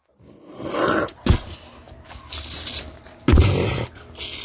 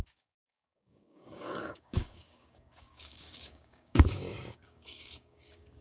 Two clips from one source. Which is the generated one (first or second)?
second